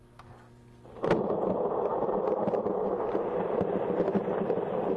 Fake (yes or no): no